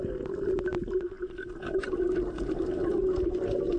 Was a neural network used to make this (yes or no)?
no